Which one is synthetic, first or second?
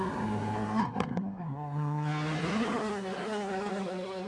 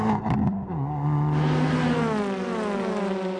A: first